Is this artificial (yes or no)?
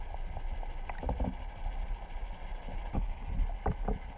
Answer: no